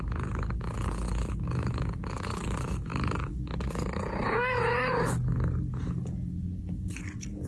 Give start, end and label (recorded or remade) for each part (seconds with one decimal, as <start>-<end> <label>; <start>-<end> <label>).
0.0-7.5 remade